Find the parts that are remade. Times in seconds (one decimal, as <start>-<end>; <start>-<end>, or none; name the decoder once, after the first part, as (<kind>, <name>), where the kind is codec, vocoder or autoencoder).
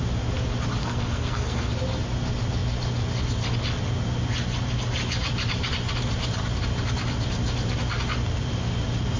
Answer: 0.8-1.7 (codec, SNAC)